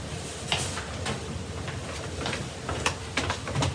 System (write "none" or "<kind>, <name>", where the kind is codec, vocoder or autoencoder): none